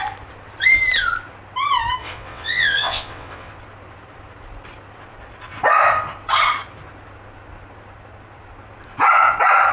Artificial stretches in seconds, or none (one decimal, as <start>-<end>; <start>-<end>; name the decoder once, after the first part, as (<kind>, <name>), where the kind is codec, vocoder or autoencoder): 2.0-3.5 (vocoder, WaveNeXt)